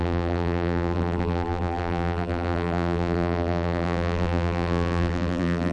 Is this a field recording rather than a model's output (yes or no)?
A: no